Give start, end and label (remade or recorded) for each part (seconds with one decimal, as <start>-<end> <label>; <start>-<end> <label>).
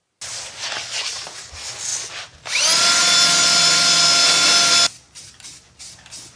0.0-6.4 recorded